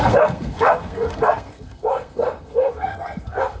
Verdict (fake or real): fake